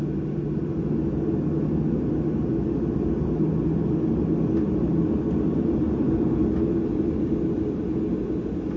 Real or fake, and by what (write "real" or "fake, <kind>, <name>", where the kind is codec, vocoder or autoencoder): real